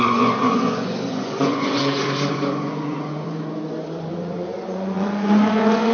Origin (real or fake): fake